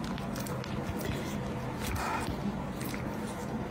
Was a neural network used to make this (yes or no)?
no